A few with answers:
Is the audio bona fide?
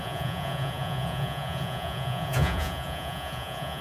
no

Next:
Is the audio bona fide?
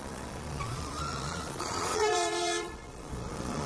no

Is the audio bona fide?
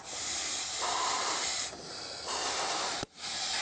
yes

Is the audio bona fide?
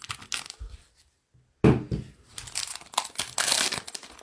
yes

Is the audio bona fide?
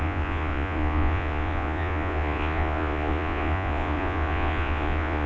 no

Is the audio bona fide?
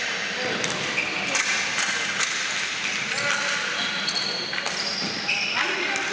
yes